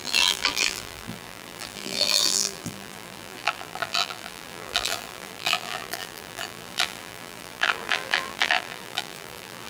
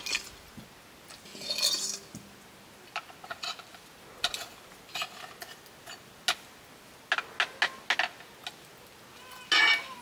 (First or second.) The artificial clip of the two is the first